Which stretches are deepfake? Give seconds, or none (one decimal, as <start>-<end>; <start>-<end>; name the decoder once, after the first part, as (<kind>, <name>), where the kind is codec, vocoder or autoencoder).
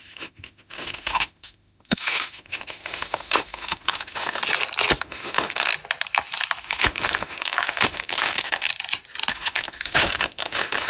0.0-4.4 (autoencoder, DAC-VAE); 5.0-5.7; 6.6-8.7; 9.3-10.9